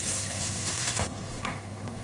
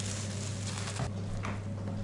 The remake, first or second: first